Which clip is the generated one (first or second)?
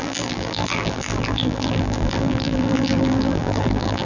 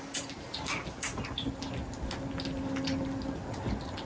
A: first